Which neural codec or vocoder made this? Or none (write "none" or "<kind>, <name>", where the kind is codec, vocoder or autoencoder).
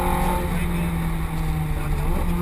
none